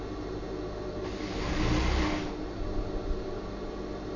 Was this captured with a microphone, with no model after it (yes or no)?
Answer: yes